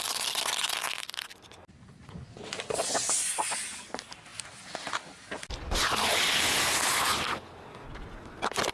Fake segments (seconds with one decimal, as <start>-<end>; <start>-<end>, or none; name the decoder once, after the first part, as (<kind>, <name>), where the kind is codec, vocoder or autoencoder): none